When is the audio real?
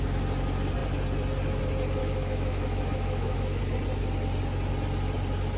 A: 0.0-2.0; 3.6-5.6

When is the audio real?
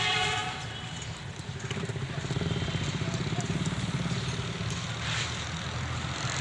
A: 0.0-6.4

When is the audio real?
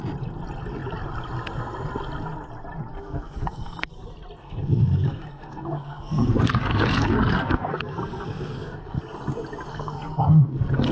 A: 0.0-2.9; 3.9-4.4; 9.0-9.7